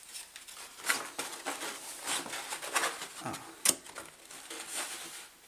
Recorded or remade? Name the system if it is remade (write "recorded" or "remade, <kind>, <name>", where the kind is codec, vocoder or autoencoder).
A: recorded